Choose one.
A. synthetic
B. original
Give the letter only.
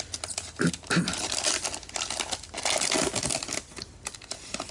B